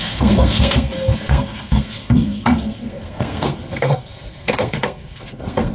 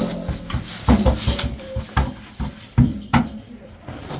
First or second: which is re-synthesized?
first